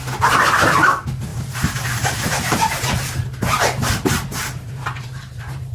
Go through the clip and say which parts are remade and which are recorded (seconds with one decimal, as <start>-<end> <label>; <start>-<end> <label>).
0.0-1.3 recorded; 1.3-3.9 remade; 3.9-4.3 recorded; 4.3-5.7 remade